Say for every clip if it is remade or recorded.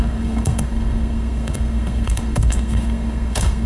remade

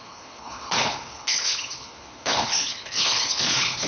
remade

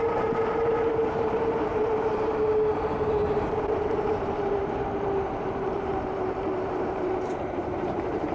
remade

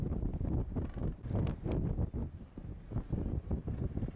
remade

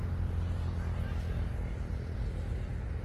recorded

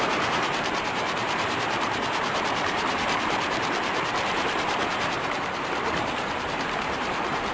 remade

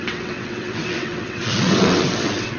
remade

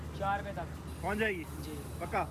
recorded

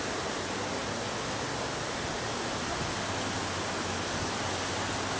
recorded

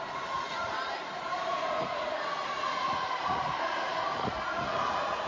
remade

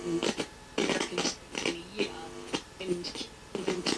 remade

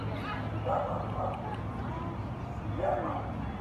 recorded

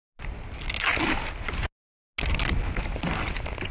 recorded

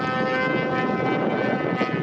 recorded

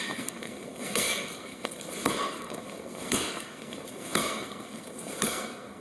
remade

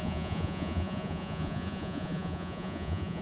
remade